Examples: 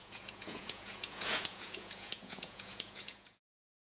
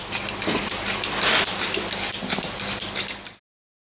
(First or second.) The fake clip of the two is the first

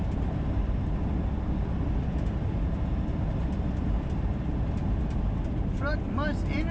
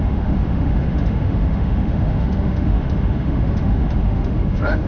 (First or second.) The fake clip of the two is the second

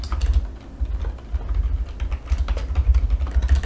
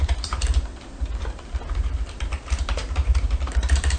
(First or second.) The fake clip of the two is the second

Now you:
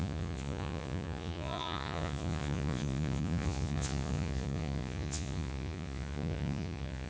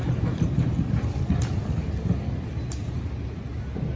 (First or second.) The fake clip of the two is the first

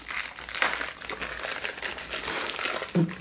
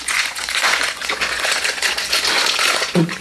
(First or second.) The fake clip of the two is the second